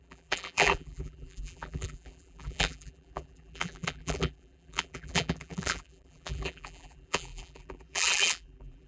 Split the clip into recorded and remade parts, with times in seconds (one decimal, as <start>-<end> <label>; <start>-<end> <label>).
0.0-8.9 remade